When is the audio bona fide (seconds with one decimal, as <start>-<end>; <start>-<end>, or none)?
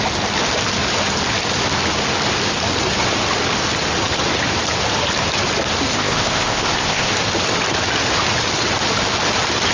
0.0-5.9; 7.1-9.7